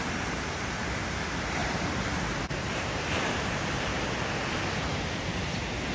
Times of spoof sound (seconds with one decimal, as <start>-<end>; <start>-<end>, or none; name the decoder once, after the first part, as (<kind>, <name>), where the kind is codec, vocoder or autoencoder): 1.6-4.0 (vocoder, BigVGAN v2)